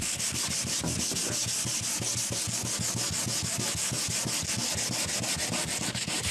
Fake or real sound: real